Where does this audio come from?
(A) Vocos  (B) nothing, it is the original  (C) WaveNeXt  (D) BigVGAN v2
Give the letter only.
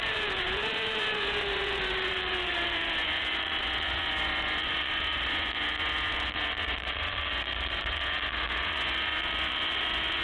A